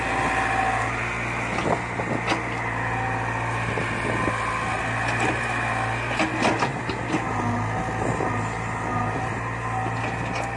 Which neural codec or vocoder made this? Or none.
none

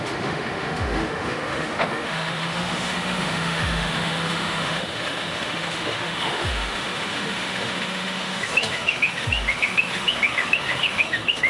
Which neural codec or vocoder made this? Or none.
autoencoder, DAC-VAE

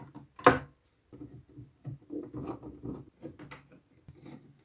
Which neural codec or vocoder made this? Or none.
none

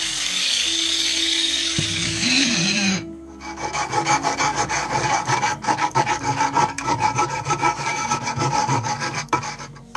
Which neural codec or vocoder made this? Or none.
codec, DAC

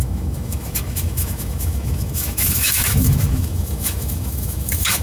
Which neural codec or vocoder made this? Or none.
autoencoder, DAC-VAE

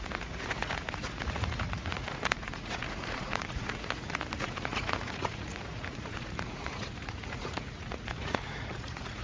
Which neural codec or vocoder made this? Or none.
vocoder, Vocos